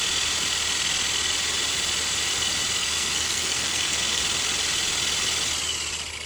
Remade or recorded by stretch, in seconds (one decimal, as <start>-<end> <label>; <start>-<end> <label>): 0.0-2.8 recorded; 2.8-4.2 remade; 4.2-6.3 recorded